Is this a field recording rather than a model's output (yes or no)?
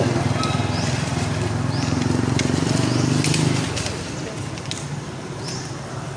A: yes